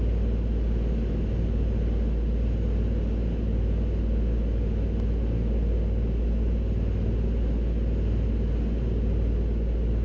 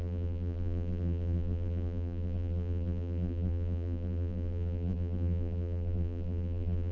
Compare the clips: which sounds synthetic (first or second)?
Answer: second